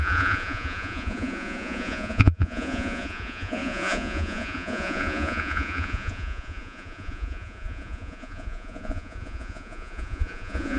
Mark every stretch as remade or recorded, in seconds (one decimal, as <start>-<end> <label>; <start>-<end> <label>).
0.0-10.8 remade